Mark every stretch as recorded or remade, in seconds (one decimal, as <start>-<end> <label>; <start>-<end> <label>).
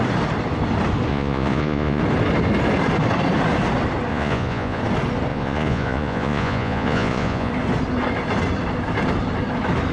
0.0-1.1 recorded; 1.1-2.0 remade; 2.0-4.1 recorded; 4.1-4.8 remade; 4.8-5.3 recorded; 5.3-7.5 remade; 7.5-9.9 recorded